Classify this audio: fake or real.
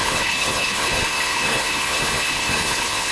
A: fake